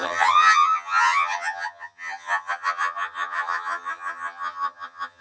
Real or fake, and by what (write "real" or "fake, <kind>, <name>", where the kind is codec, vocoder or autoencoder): fake, vocoder, HiFi-GAN